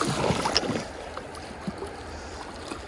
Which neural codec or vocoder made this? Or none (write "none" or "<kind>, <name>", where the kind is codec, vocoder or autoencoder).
none